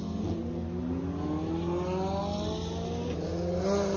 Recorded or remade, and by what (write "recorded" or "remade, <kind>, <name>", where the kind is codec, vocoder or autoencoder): recorded